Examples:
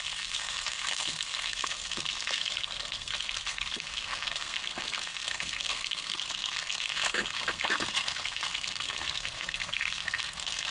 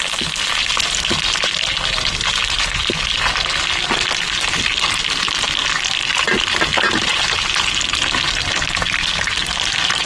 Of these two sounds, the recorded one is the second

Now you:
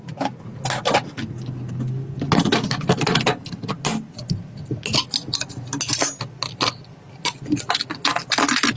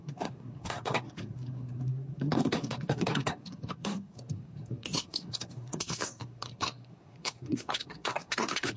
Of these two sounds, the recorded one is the first